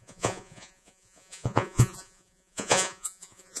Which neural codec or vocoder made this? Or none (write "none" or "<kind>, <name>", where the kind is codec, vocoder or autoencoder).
vocoder, Vocos